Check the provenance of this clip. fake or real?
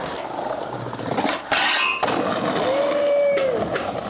fake